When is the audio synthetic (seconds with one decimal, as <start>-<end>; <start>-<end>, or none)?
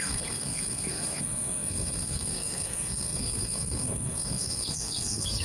0.0-5.4